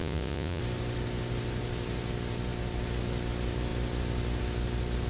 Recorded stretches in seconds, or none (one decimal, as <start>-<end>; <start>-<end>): 0.6-5.1